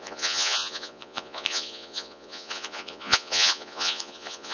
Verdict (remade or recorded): remade